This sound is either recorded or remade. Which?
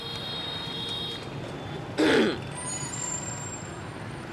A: recorded